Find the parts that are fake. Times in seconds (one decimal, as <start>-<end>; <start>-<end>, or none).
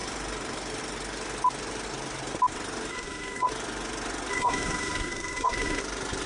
2.9-3.5; 4.3-5.8